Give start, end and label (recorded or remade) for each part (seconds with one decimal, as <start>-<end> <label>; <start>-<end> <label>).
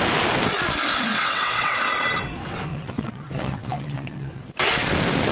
0.0-1.1 recorded; 1.1-1.8 remade; 1.8-2.7 recorded; 2.7-4.5 remade; 4.5-5.3 recorded